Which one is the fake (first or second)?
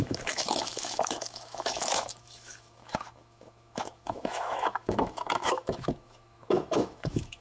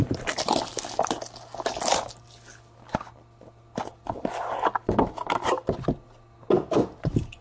first